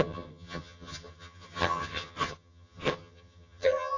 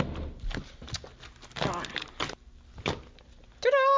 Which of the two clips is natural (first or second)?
second